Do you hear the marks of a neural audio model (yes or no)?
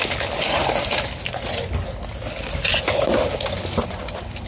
no